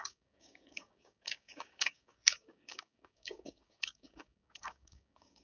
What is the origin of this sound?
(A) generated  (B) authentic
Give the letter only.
A